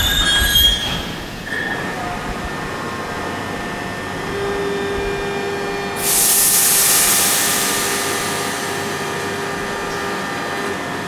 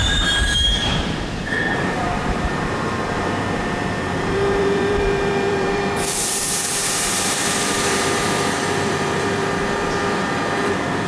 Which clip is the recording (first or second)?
first